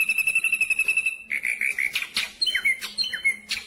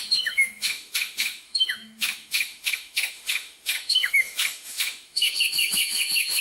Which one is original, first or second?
first